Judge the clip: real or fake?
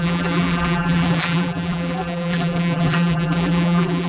fake